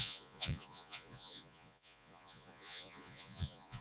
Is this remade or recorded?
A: remade